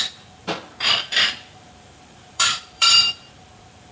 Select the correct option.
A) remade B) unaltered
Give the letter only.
A